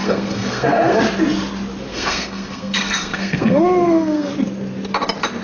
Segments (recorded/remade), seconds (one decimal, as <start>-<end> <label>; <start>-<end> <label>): 0.0-1.0 remade; 1.0-1.9 recorded; 1.9-4.3 remade; 4.3-5.4 recorded